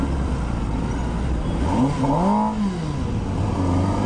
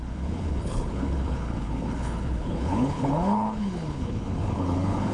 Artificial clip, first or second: second